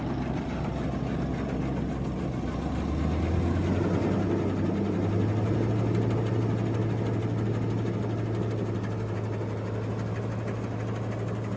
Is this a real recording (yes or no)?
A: yes